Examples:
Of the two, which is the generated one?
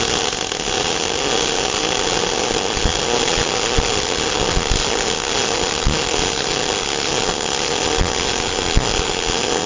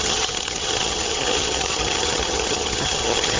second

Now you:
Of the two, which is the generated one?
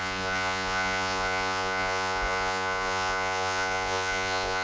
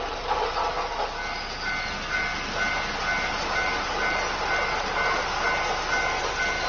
first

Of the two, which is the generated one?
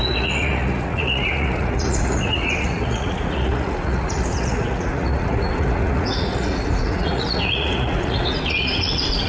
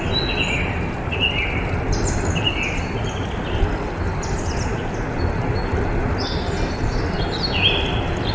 first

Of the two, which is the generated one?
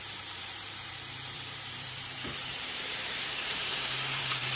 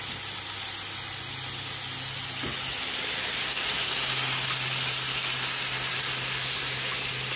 first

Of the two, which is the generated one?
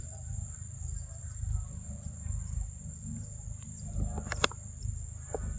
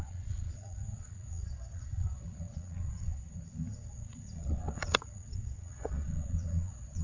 second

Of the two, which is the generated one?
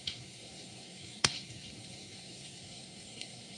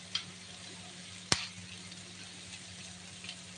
first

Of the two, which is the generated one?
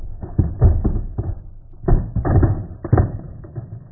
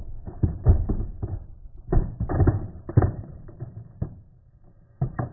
second